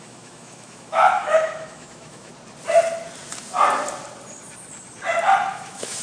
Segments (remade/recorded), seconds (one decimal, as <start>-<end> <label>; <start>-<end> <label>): 0.0-2.3 remade; 2.3-5.5 recorded; 5.5-6.0 remade